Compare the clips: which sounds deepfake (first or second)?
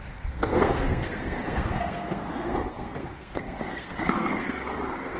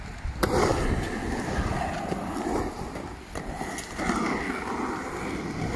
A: first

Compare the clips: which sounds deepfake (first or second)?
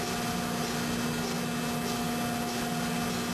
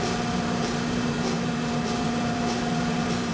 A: second